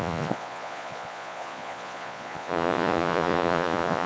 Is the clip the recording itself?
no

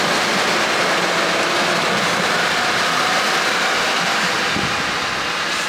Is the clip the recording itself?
yes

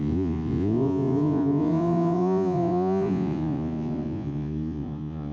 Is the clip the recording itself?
no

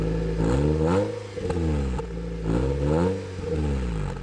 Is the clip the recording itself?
yes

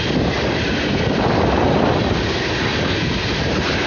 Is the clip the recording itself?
yes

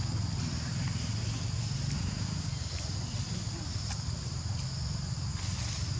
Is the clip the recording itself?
yes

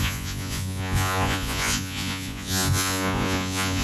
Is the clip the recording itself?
no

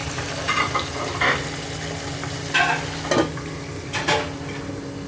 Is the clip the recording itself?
yes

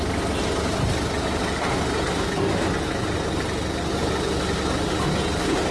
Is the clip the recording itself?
yes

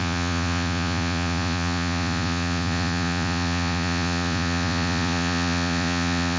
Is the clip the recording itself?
no